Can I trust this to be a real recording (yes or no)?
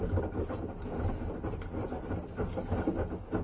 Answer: yes